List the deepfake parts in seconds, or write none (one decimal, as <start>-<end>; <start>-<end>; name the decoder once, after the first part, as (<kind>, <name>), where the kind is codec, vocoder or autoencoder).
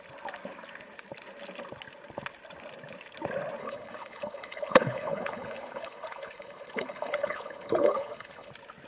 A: 3.6-8.5 (codec, HILCodec)